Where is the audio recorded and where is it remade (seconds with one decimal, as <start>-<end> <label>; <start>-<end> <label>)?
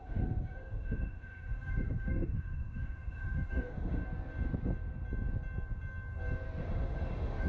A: 0.0-4.0 remade; 4.0-6.6 recorded; 6.6-7.5 remade